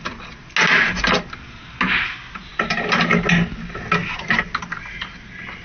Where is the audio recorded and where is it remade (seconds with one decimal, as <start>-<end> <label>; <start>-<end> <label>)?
0.0-5.6 recorded